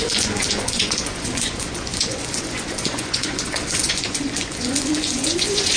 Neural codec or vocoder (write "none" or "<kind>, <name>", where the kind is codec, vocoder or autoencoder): vocoder, Vocos